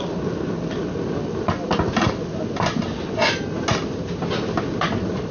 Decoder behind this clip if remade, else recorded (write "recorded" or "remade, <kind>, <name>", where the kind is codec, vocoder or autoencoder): recorded